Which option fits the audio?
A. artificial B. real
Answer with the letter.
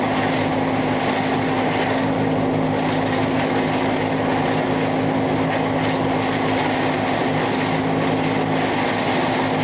B